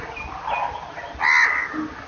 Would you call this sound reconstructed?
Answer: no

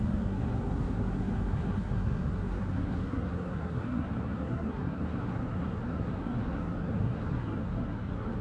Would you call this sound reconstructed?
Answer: yes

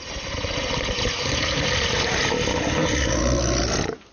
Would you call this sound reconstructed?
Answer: no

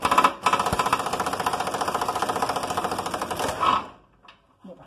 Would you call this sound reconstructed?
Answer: no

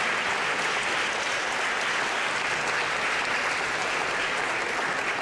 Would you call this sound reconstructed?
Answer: no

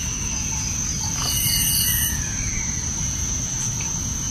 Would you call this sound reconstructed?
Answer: no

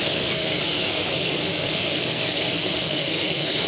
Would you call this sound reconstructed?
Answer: yes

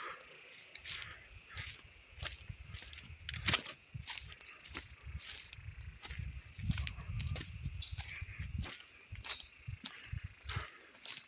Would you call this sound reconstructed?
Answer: no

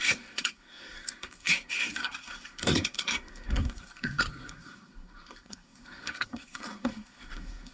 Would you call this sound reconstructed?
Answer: yes